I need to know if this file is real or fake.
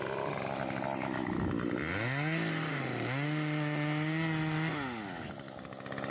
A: real